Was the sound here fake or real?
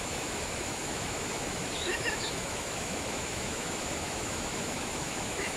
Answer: fake